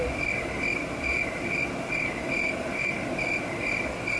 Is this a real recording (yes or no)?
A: yes